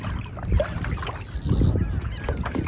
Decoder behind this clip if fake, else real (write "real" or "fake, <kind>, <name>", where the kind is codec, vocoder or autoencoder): real